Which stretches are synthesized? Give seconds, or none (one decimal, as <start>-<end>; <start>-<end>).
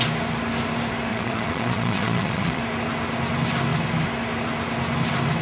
1.1-2.6